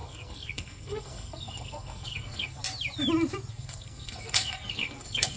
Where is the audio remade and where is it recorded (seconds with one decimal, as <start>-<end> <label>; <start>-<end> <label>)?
0.0-2.6 remade; 2.6-3.5 recorded; 3.5-5.4 remade